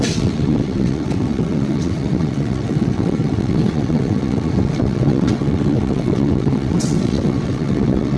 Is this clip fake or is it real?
fake